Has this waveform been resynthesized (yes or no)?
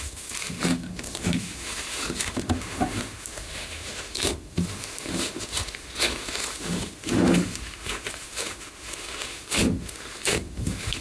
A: yes